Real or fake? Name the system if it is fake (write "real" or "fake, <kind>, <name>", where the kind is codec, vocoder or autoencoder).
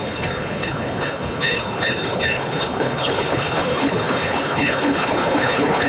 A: fake, codec, HILCodec